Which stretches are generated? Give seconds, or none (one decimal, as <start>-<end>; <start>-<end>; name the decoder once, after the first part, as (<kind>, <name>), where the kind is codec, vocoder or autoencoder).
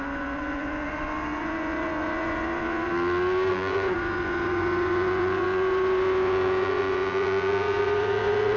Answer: 0.0-2.9 (vocoder, Vocos); 3.5-8.6